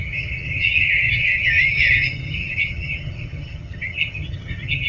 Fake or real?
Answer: fake